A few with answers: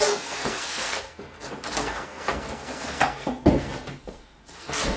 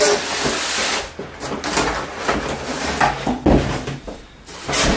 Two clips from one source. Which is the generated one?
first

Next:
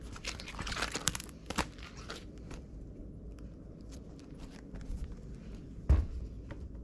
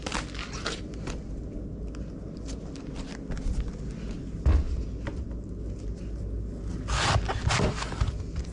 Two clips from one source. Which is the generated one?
first